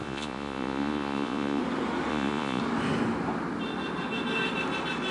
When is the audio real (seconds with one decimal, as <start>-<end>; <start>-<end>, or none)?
1.6-2.1; 2.6-5.1